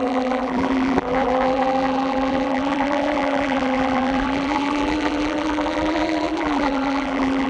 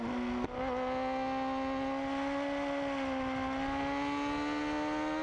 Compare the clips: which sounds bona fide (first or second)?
second